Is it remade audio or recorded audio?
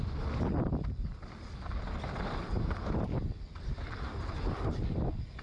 recorded